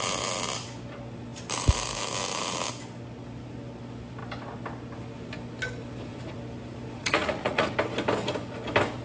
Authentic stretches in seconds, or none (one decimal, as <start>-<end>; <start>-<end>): 0.0-7.0; 7.7-9.0